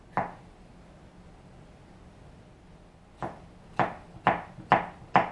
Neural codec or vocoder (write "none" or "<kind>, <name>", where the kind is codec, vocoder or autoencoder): none